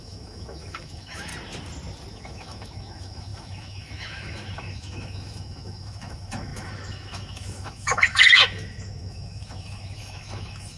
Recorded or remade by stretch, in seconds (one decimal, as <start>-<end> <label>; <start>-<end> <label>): 0.0-1.3 remade; 1.3-2.1 recorded; 2.1-10.8 remade